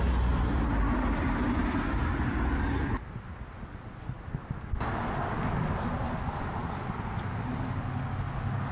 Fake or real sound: real